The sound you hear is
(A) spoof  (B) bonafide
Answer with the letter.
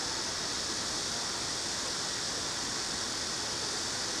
B